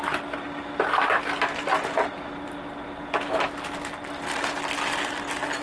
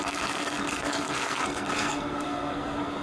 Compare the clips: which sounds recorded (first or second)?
first